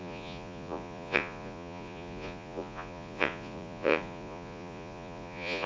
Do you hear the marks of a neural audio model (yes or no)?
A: yes